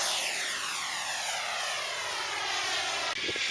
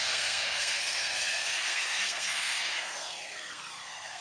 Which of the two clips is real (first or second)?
first